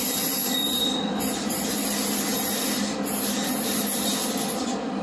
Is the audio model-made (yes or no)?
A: no